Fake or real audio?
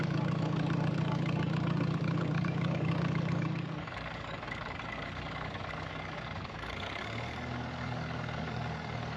fake